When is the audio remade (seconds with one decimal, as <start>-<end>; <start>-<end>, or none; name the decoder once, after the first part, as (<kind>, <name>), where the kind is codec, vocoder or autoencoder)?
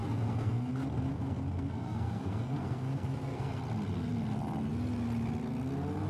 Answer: 0.0-0.7 (codec, SNAC); 1.1-3.6